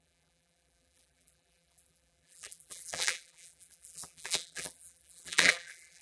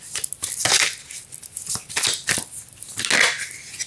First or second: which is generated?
first